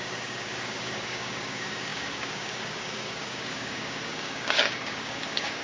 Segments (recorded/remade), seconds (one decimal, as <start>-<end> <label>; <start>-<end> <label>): 0.0-5.6 remade